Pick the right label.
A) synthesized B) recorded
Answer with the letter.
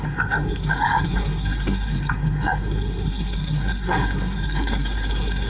A